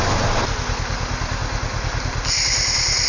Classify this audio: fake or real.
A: real